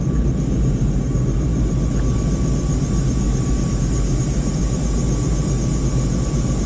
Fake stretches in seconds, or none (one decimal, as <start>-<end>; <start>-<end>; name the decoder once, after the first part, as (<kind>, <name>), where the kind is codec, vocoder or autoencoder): 0.0-1.5 (vocoder, BigVGAN v2); 3.7-4.6; 6.3-6.7